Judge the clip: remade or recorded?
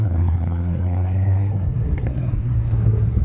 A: remade